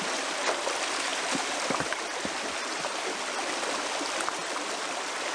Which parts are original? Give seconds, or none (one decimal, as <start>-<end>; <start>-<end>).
0.0-5.3